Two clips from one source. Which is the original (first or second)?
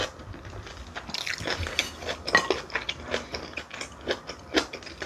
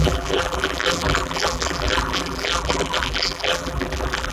first